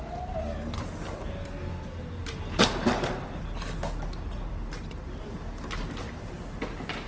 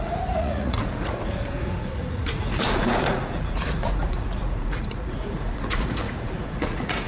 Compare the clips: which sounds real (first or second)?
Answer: first